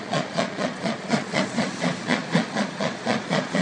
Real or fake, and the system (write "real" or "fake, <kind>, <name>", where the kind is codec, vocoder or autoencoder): fake, vocoder, Vocos